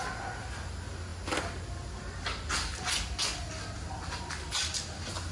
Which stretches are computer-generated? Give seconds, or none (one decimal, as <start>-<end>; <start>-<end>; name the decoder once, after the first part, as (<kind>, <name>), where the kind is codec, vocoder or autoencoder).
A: none